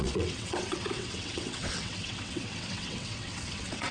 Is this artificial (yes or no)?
yes